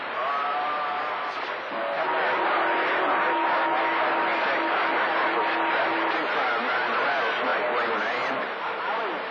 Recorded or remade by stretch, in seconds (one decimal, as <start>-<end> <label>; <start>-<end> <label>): 0.0-9.3 recorded